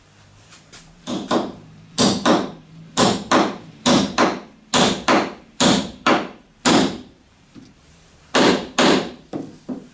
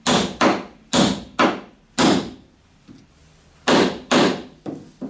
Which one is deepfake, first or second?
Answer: first